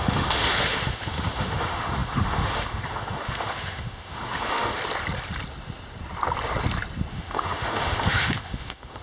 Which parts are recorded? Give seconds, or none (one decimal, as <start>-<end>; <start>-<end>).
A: 4.8-7.1